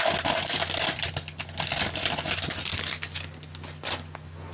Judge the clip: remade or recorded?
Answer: recorded